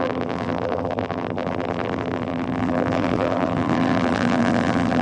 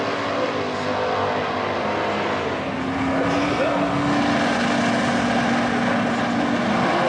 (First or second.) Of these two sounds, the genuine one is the second